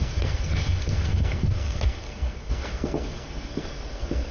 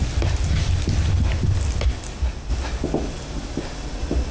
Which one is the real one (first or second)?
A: second